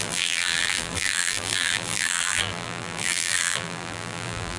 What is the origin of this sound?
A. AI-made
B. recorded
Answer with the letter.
A